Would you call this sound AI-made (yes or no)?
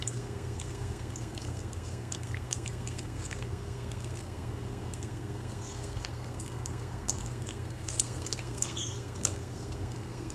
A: yes